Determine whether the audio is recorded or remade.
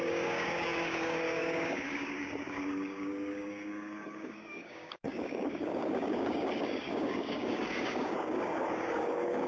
remade